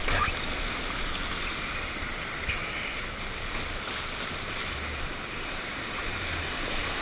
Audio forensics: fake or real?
real